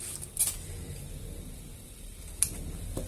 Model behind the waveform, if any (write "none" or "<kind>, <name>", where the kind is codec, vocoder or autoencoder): none